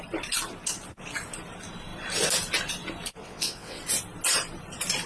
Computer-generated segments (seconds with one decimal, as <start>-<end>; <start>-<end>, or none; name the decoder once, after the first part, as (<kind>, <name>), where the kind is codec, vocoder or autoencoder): 3.2-3.8 (vocoder, WaveNeXt)